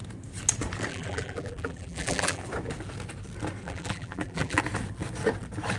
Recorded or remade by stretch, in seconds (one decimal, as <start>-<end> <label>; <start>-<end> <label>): 0.0-0.9 recorded; 0.9-2.4 remade; 2.4-3.6 recorded; 3.6-4.6 remade; 4.6-5.8 recorded